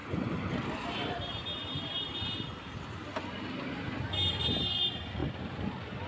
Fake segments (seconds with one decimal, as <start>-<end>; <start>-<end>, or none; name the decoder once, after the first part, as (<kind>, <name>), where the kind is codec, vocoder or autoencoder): none